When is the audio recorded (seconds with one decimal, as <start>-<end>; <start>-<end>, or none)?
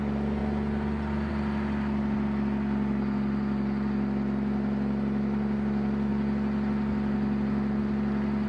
0.0-8.5